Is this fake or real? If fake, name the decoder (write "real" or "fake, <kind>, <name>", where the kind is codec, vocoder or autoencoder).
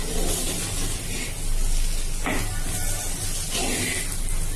real